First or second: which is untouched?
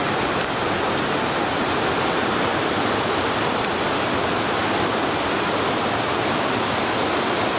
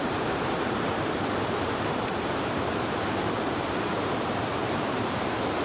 first